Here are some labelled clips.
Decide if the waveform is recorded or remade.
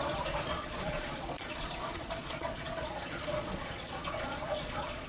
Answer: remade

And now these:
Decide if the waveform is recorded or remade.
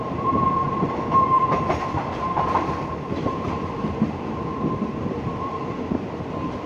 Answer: remade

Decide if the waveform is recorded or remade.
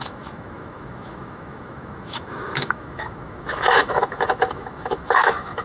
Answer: remade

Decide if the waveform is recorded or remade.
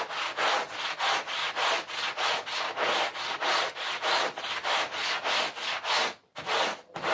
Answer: recorded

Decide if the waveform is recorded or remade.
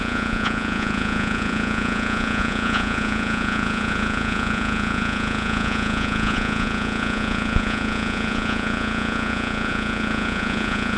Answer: remade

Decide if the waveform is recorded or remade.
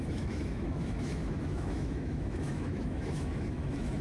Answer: remade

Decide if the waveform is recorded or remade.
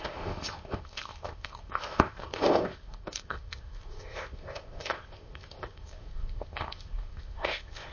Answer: remade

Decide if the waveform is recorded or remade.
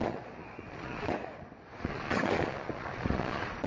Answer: remade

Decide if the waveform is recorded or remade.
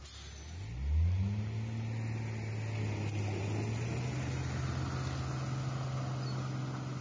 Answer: recorded